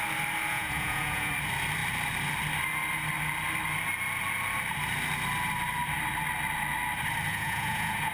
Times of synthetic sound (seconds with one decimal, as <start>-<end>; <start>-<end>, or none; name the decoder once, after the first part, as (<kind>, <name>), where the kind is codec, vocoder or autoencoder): 0.5-1.3 (vocoder, Vocos); 7.3-8.1